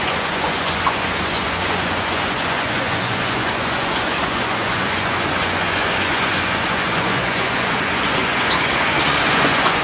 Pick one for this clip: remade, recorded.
remade